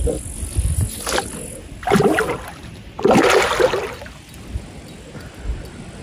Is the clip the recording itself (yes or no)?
yes